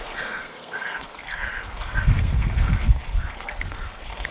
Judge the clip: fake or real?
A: fake